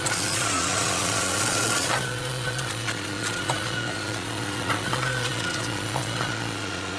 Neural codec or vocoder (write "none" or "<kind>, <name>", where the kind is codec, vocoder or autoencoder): vocoder, Vocos